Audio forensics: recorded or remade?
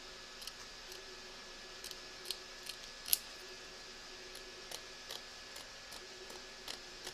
recorded